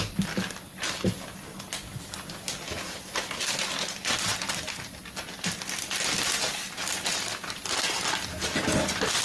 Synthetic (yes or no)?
no